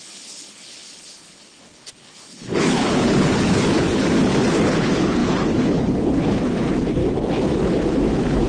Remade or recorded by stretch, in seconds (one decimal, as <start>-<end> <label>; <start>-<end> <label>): 0.0-7.0 remade; 7.0-8.1 recorded; 8.1-8.5 remade

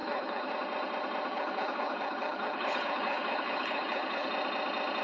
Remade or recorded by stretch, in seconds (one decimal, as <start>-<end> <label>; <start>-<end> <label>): 0.0-0.5 remade; 0.5-1.3 recorded; 1.3-4.3 remade; 4.3-5.0 recorded

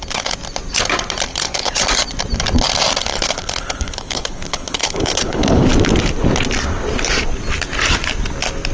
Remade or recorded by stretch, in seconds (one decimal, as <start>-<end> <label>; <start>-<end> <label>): 0.0-1.3 recorded; 1.3-1.8 remade; 1.8-3.1 recorded; 3.1-5.6 remade; 5.6-8.7 recorded

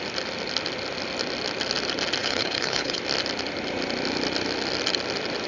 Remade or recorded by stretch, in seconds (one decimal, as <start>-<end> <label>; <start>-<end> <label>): 0.0-2.2 recorded; 2.2-3.0 remade; 3.0-5.5 recorded

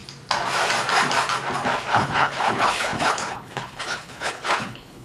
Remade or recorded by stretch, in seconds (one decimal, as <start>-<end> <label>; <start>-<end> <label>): 0.0-1.9 recorded; 1.9-5.0 remade

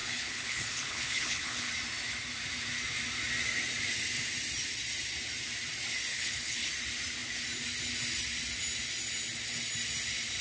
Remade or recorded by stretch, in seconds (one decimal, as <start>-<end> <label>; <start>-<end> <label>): 0.0-1.7 remade; 1.7-6.1 recorded; 6.1-6.7 remade; 6.7-10.4 recorded

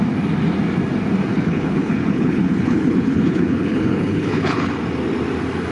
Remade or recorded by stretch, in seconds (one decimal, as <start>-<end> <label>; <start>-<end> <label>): 0.0-1.3 recorded; 1.3-4.7 remade; 4.7-5.7 recorded

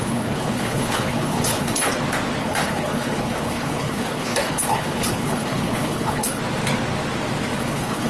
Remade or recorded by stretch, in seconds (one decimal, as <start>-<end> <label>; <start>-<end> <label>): 0.0-1.9 remade; 1.9-2.4 recorded; 2.4-6.4 remade; 6.4-7.6 recorded; 7.6-8.1 remade